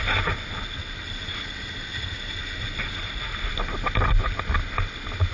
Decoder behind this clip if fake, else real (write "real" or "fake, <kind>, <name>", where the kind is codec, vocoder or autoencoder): real